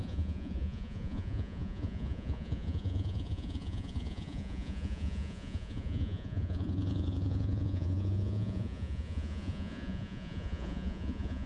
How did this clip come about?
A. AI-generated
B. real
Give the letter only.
A